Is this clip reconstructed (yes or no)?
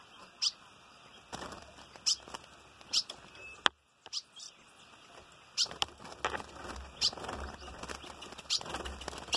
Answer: no